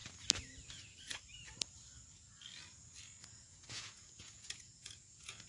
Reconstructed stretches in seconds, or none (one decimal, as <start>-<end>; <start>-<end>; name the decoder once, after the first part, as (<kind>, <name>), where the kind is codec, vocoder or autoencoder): 3.3-5.5 (vocoder, Vocos)